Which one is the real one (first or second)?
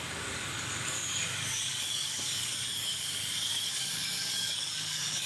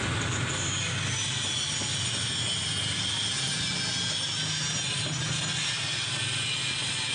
second